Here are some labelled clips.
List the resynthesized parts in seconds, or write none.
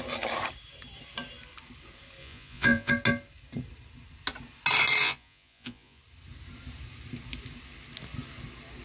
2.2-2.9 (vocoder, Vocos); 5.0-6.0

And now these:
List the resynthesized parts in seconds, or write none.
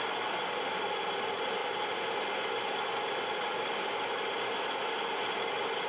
none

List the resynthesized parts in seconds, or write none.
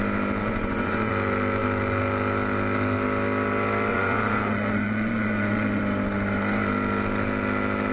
0.4-1.1 (vocoder, Vocos); 3.9-5.8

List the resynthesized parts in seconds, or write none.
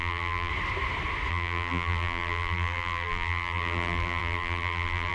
0.0-0.5 (vocoder, BigVGAN v2); 1.3-5.1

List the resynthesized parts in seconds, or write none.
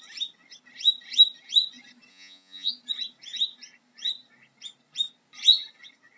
2.1-2.7 (vocoder, Vocos)